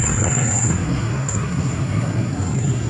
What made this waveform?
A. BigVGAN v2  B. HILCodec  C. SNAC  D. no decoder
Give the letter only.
C